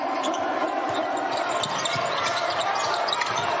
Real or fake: real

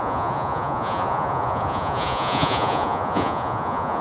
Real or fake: fake